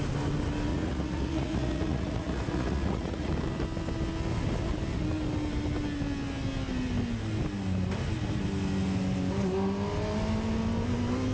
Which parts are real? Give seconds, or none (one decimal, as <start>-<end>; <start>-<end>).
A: 0.0-0.7; 3.3-11.3